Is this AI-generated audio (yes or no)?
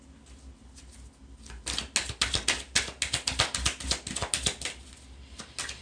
no